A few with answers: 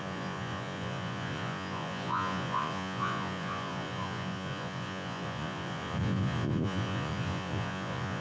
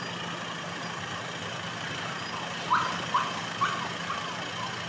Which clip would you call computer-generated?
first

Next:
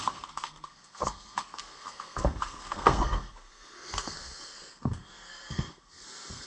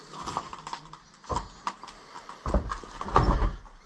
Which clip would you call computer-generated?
first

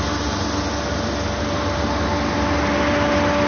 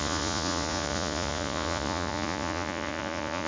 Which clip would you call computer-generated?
second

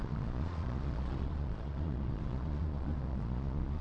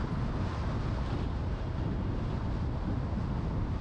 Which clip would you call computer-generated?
first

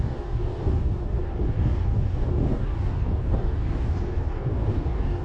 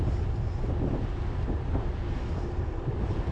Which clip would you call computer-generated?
first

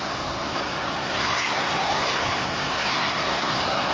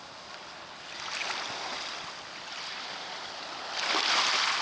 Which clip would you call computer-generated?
first